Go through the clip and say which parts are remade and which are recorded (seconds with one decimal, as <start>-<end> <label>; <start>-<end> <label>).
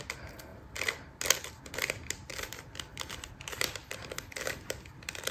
0.0-2.3 recorded; 2.3-5.3 remade